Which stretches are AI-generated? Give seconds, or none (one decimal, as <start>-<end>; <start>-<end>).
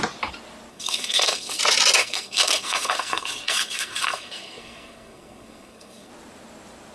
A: 0.7-1.6; 2.0-6.1